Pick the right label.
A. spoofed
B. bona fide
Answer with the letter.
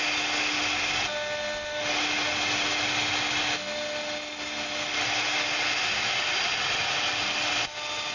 B